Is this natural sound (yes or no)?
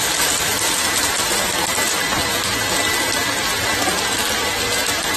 yes